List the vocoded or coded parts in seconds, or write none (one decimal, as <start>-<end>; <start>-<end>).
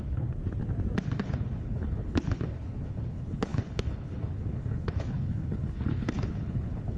0.0-0.4; 1.0-7.0